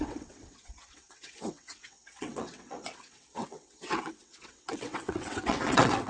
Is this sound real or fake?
fake